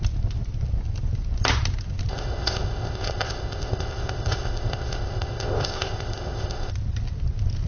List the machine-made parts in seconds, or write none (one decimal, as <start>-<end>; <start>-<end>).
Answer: 2.1-6.7